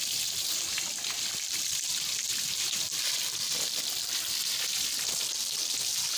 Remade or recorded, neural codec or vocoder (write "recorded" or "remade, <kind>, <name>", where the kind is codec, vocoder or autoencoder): recorded